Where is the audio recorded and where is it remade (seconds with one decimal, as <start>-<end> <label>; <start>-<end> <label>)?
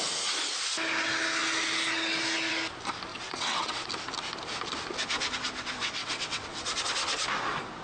0.0-3.1 recorded; 3.1-3.9 remade; 3.9-6.0 recorded; 6.0-6.8 remade; 6.8-7.8 recorded